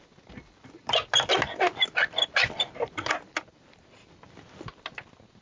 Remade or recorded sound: recorded